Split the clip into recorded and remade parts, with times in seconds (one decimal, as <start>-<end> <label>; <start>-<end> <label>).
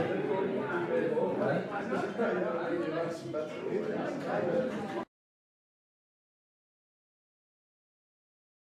0.0-8.7 recorded